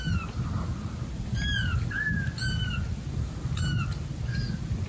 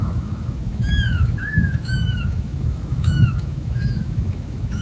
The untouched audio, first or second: first